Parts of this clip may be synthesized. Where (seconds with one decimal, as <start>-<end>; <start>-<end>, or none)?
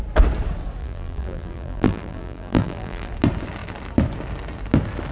0.8-3.1